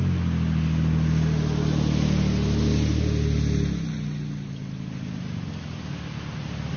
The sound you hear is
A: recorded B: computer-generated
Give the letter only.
A